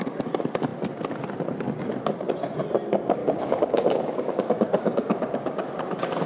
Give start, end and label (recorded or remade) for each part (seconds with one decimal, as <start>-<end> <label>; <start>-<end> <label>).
0.0-3.2 recorded; 3.2-5.7 remade; 5.7-6.3 recorded